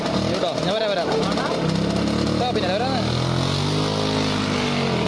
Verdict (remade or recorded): recorded